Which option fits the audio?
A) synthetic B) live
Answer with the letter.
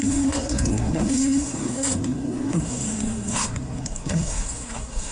A